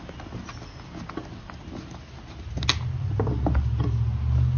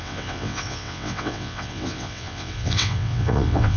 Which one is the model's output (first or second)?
second